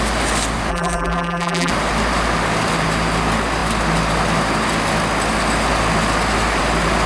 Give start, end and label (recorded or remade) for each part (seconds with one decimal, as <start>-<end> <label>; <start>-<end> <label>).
0.0-0.7 recorded; 0.7-1.7 remade; 1.7-7.1 recorded